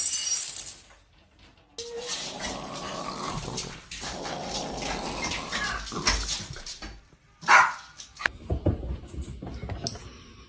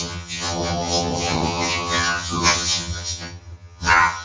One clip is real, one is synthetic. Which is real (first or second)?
first